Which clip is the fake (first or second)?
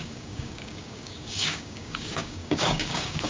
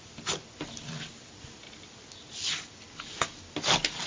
first